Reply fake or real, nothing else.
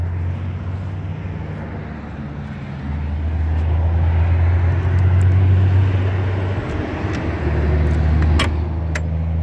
real